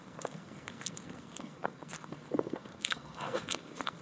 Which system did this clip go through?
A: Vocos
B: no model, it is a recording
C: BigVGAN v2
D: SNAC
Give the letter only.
D